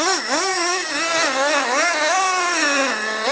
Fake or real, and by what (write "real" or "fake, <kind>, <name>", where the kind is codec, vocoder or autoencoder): real